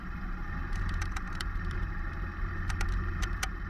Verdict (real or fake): fake